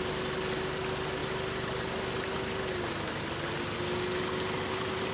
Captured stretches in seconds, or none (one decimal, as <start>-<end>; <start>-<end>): 0.0-5.1